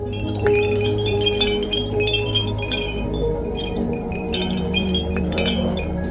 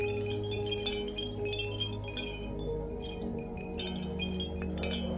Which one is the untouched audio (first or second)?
second